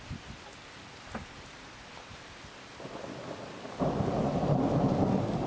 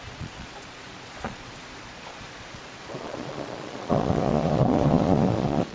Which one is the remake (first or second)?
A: second